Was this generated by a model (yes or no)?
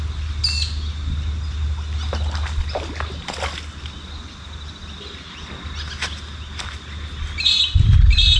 no